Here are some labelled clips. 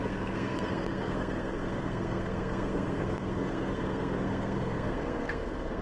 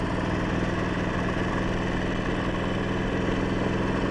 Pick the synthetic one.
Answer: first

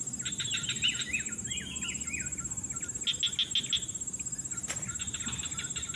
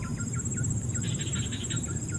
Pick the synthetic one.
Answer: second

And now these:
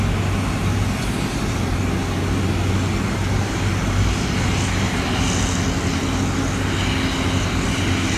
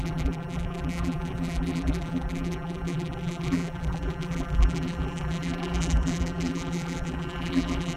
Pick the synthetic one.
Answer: second